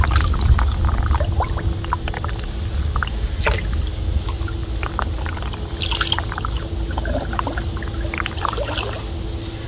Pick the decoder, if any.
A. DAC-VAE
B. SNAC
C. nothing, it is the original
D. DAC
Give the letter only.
C